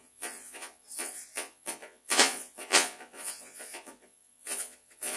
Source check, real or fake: fake